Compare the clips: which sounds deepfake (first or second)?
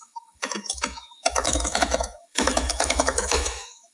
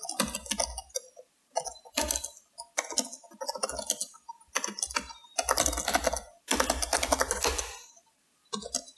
first